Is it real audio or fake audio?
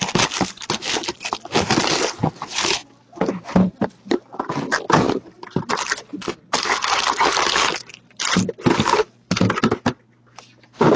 real